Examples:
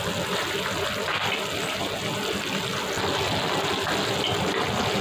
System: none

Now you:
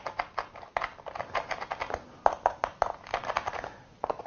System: none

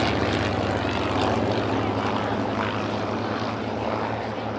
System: none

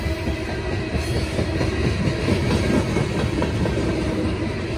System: none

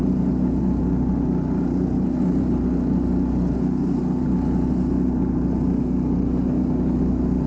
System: none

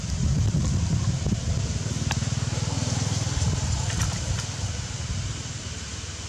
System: none